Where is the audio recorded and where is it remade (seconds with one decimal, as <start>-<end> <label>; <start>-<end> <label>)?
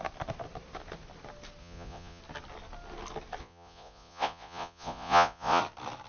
0.0-1.6 recorded; 1.6-2.2 remade; 2.2-3.4 recorded; 3.4-5.6 remade; 5.6-6.1 recorded